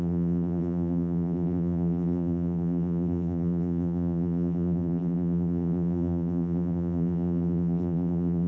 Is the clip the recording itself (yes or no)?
no